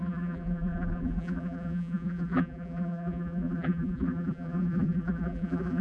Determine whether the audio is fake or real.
fake